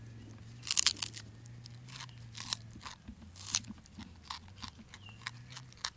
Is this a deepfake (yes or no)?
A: no